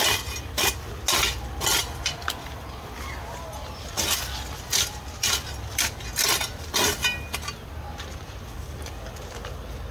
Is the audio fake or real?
real